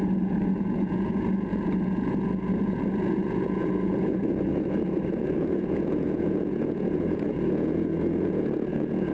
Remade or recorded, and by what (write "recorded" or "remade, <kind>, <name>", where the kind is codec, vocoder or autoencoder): remade, vocoder, Vocos